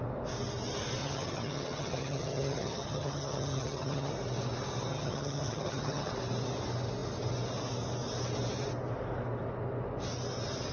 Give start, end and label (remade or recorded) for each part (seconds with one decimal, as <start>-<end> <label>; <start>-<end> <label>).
0.0-1.0 recorded; 1.0-4.1 remade; 4.1-4.9 recorded; 4.9-6.1 remade; 6.1-10.7 recorded